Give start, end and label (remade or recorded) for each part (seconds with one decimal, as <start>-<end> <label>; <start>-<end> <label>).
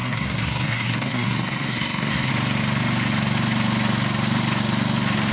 0.0-2.3 remade; 2.3-5.3 recorded